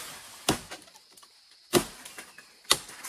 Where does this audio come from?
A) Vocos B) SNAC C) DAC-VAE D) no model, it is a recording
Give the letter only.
D